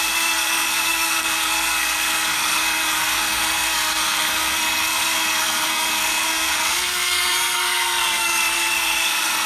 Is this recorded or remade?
remade